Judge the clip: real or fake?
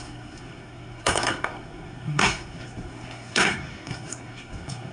fake